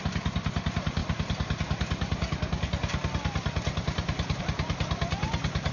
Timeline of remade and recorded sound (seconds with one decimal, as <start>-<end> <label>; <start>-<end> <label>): 0.0-5.7 recorded